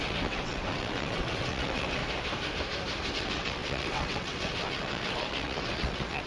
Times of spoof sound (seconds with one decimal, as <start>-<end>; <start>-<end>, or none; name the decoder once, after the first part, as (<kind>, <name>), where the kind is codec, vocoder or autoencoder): 0.0-2.0 (vocoder, WaveNeXt); 3.1-6.3